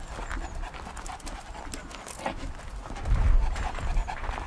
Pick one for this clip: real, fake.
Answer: real